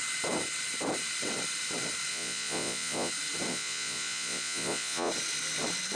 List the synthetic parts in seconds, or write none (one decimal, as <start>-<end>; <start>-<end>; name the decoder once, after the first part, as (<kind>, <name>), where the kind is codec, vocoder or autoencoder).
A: 2.1-3.1 (vocoder, Vocos); 3.5-5.1